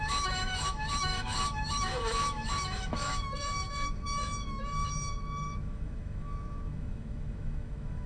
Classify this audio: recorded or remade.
remade